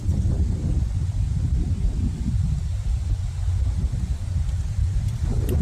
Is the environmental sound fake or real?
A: real